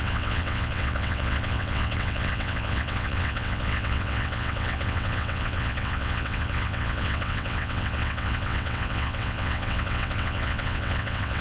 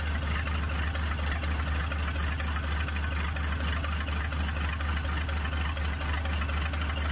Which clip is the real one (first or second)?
second